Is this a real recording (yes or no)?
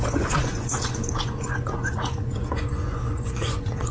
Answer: no